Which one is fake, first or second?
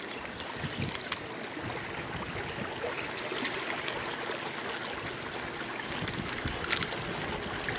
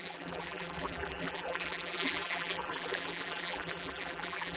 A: second